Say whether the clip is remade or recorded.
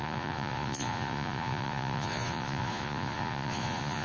remade